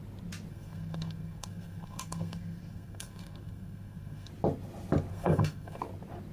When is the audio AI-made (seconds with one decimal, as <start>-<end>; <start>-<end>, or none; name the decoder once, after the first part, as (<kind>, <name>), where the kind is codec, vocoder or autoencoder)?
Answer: 0.5-4.3 (codec, SNAC); 5.1-5.8